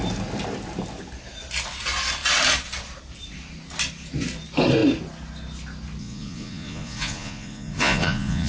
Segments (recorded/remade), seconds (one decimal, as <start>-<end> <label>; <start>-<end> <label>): 0.0-6.0 recorded; 6.0-8.5 remade